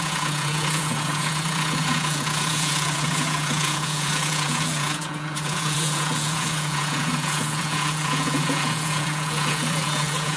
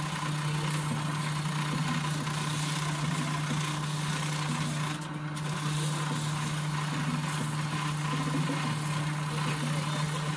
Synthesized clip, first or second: first